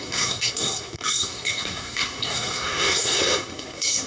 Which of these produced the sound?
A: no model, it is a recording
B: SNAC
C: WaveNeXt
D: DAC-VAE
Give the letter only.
B